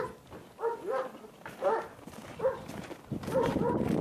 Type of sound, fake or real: real